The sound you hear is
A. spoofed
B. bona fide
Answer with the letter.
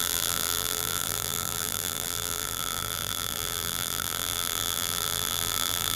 A